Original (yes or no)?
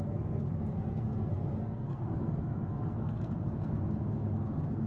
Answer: no